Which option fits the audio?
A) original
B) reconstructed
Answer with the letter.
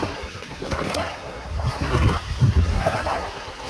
B